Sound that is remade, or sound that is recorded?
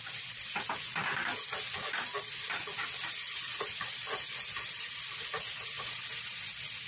recorded